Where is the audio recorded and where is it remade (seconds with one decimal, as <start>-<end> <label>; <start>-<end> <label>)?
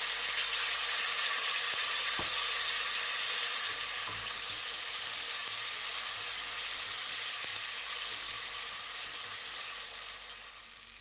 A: 0.0-11.0 recorded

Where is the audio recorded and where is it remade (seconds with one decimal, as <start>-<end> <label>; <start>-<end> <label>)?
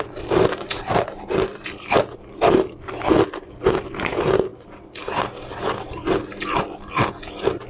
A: 0.0-7.7 recorded